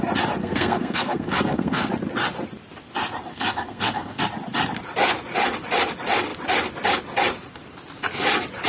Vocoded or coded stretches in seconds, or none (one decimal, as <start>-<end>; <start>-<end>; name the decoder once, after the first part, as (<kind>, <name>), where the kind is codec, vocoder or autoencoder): 0.4-1.9 (codec, SNAC); 3.3-4.2